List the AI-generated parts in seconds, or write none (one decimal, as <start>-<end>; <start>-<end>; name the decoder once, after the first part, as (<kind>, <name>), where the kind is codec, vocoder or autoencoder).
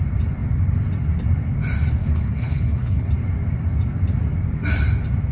2.0-3.1 (codec, HILCodec)